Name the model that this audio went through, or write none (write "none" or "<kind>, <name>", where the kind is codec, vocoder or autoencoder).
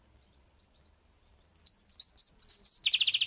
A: none